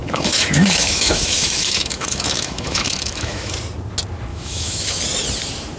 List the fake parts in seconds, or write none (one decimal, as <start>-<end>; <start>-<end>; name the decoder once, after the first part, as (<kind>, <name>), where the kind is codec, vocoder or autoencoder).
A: 0.0-3.5 (autoencoder, DAC-VAE); 4.3-5.0